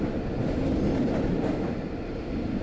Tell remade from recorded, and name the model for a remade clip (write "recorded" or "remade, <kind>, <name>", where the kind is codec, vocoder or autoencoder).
recorded